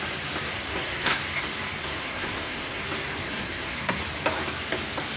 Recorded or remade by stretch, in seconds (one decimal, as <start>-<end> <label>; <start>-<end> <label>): 0.0-0.7 recorded; 0.7-1.2 remade; 1.2-1.8 recorded; 1.8-2.8 remade; 2.8-3.2 recorded; 3.2-4.0 remade; 4.0-5.2 recorded